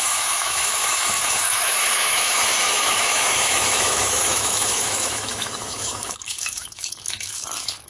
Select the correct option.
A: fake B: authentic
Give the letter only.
A